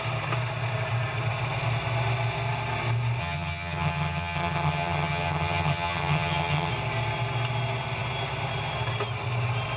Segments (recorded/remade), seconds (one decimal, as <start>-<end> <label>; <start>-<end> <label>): 0.0-3.2 recorded; 3.2-6.7 remade; 6.7-9.8 recorded